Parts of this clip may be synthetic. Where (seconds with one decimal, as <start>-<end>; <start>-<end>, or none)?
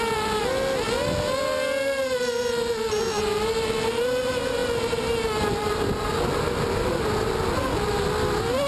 none